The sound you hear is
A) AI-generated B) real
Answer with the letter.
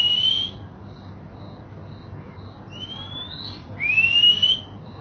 B